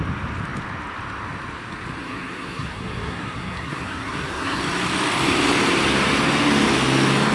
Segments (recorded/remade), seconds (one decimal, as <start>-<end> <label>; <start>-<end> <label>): 0.0-2.0 recorded; 2.0-4.6 remade; 4.6-7.3 recorded